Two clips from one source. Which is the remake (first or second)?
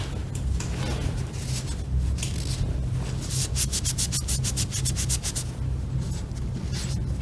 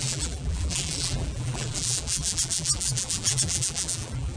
second